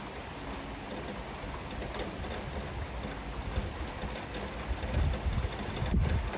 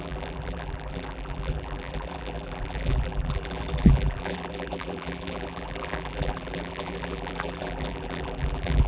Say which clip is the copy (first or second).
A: second